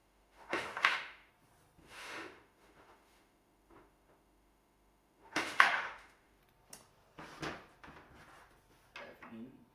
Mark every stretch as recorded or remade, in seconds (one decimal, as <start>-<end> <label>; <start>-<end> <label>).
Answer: 0.0-1.3 remade; 1.3-1.8 recorded; 1.8-6.4 remade; 6.4-9.7 recorded